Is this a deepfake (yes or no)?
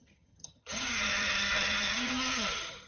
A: yes